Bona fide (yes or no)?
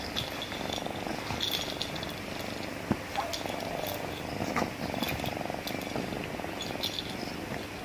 yes